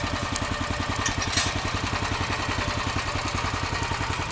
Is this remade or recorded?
recorded